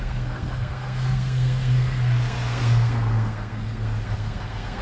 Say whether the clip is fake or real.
fake